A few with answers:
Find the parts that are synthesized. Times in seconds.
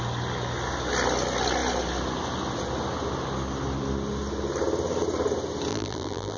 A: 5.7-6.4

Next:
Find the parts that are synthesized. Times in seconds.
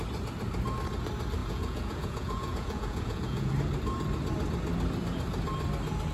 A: 1.4-3.5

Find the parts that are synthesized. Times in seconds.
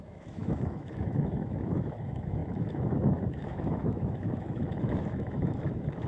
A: 0.0-6.1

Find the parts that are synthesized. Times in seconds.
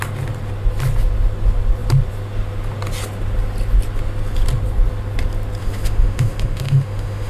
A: 5.6-7.3